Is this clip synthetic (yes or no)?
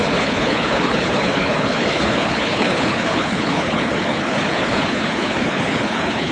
yes